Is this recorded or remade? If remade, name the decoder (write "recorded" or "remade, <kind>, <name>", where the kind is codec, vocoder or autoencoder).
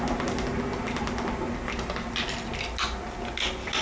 recorded